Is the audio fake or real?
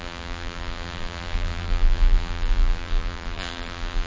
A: fake